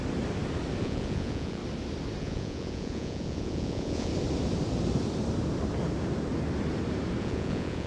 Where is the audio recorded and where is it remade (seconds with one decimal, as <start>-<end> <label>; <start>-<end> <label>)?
0.0-0.8 recorded; 0.8-1.6 remade; 1.6-2.2 recorded; 2.2-4.1 remade; 4.1-7.2 recorded; 7.2-7.9 remade

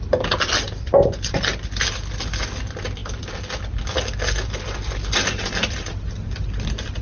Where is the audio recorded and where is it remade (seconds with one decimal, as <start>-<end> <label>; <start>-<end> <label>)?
0.0-7.0 recorded

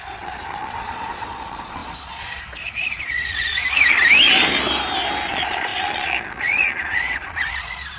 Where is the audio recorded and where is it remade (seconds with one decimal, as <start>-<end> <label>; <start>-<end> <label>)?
0.0-3.6 remade; 3.6-5.3 recorded; 5.3-8.0 remade

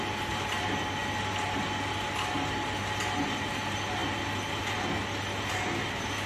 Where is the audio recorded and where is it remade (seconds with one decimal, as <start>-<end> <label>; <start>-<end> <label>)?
0.0-6.3 recorded

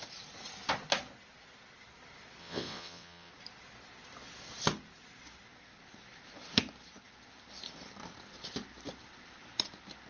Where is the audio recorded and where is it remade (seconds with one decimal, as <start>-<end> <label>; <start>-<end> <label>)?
0.0-2.4 recorded; 2.4-3.3 remade; 3.3-10.1 recorded

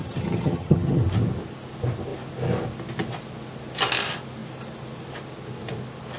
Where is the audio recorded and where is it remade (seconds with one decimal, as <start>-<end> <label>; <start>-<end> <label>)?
0.0-1.0 remade; 1.0-6.2 recorded

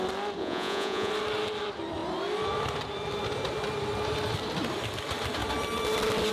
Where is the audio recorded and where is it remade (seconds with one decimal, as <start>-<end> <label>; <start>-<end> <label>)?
0.0-0.4 recorded; 0.4-1.1 remade; 1.1-6.3 recorded

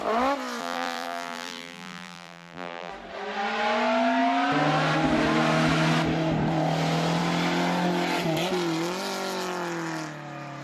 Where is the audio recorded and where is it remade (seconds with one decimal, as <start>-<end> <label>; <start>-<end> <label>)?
0.0-0.6 recorded; 0.6-2.9 remade; 2.9-10.6 recorded